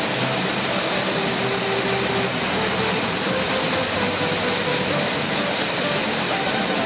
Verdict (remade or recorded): recorded